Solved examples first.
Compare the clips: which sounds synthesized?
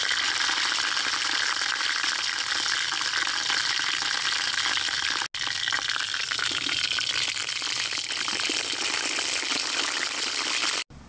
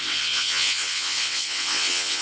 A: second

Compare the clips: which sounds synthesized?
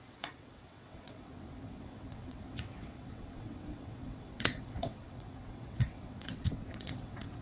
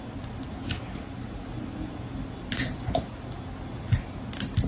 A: first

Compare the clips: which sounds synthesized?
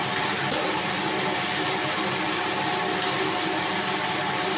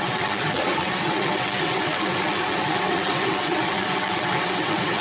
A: second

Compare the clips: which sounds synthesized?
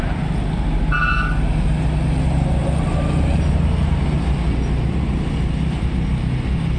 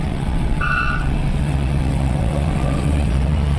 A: second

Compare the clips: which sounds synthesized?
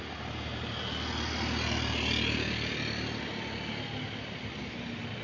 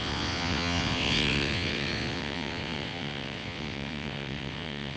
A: second